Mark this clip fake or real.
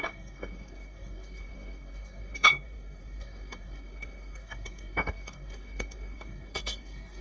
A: fake